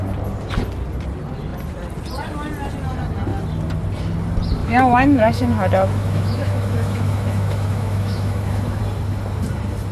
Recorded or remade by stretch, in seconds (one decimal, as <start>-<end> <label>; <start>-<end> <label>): 0.0-4.6 recorded; 4.6-8.8 remade; 8.8-9.9 recorded